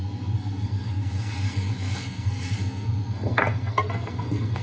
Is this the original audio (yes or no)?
no